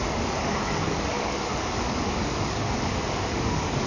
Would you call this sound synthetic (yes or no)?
yes